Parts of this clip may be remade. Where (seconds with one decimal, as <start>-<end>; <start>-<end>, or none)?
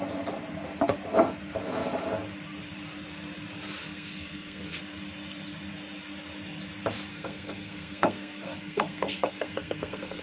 3.8-4.8; 7.1-10.2